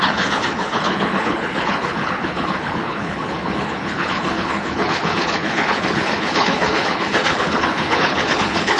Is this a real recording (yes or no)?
no